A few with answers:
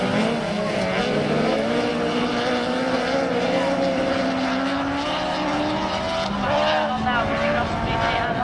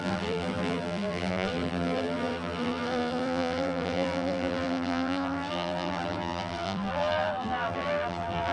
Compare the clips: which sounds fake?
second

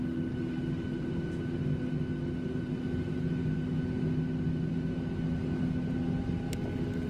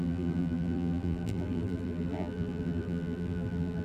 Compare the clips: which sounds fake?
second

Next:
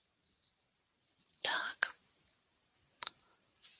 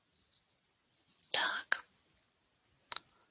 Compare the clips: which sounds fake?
first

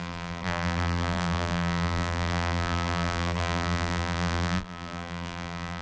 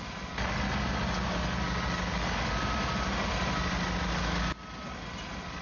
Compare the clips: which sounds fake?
first